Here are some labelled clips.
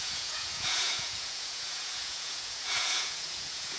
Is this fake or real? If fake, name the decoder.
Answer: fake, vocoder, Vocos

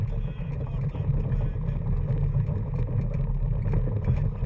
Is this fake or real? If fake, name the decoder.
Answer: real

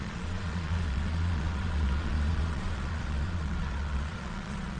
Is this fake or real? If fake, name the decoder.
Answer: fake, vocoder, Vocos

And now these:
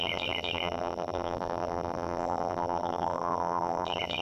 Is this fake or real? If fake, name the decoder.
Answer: fake, vocoder, BigVGAN v2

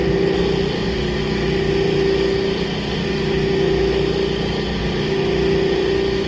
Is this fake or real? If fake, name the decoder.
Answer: real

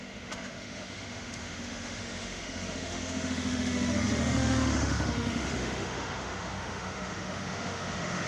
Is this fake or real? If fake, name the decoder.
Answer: fake, autoencoder, DAC-VAE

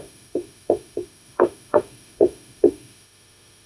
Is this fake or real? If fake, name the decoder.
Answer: fake, autoencoder, DAC-VAE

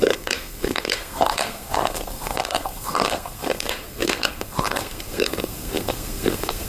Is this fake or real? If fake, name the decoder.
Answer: fake, codec, SNAC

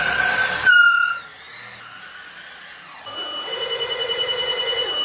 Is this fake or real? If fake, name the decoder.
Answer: real